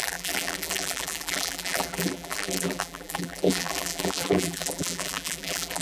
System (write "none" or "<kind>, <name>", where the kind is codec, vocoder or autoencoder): vocoder, BigVGAN v2